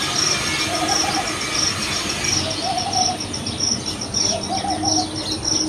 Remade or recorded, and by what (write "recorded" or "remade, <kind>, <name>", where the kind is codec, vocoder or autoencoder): recorded